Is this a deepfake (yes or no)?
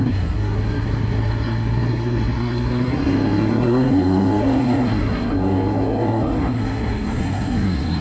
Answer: yes